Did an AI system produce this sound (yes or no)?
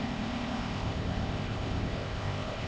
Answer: yes